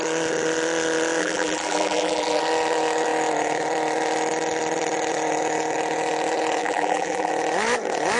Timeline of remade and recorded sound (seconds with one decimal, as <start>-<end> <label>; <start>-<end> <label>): 0.0-1.2 recorded; 1.2-2.4 remade; 2.4-6.6 recorded; 6.6-7.3 remade; 7.3-8.2 recorded